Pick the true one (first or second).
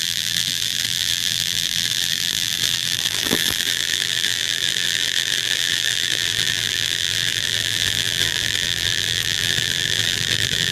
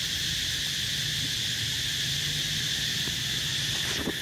second